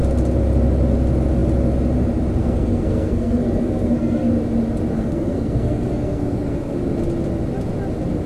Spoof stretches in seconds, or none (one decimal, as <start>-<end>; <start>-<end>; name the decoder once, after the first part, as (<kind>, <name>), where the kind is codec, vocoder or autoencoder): 2.4-4.3 (codec, SNAC); 4.9-6.8